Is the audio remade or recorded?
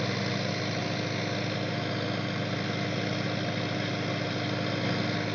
recorded